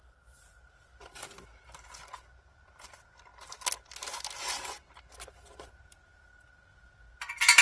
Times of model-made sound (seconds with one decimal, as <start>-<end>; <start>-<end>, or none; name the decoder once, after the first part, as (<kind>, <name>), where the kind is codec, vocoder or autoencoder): none